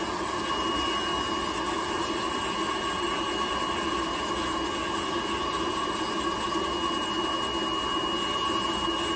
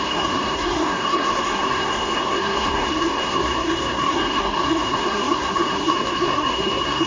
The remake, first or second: second